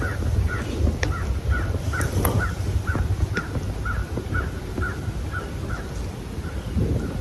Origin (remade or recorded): recorded